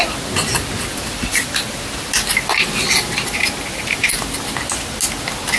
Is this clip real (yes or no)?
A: yes